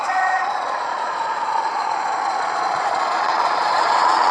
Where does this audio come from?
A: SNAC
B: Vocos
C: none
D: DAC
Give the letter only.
B